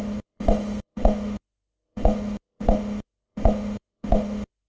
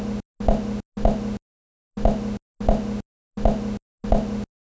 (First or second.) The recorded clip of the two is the second